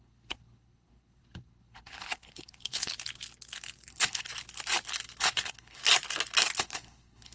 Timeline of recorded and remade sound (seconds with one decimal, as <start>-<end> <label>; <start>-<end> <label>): 0.0-2.9 remade; 2.9-3.9 recorded; 3.9-4.3 remade; 4.3-5.2 recorded; 5.2-5.8 remade; 5.8-6.6 recorded; 6.6-7.3 remade